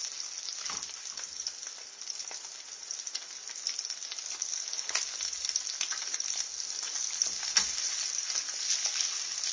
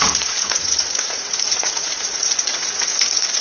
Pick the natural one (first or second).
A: first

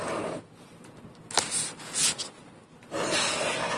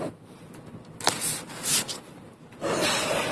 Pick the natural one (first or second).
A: first